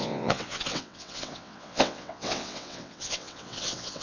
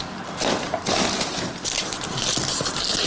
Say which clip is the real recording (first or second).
second